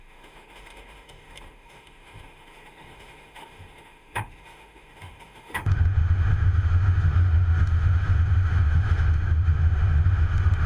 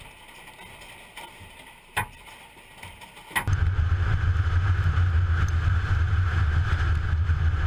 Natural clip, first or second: second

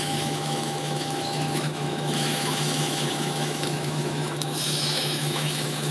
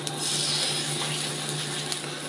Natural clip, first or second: second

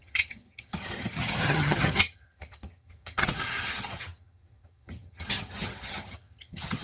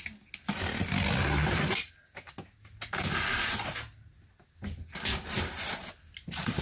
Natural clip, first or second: second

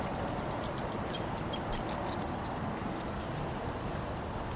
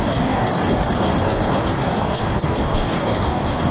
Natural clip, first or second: first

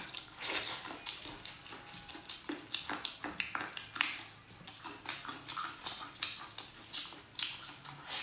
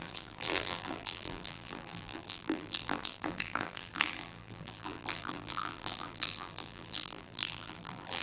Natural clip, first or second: first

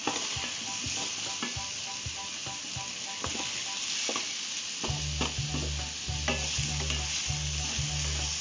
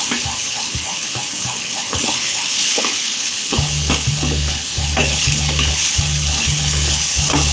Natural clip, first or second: first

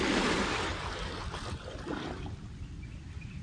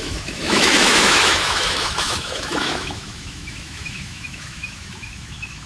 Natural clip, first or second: first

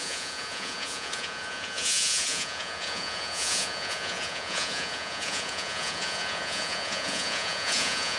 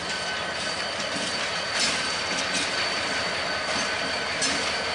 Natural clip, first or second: second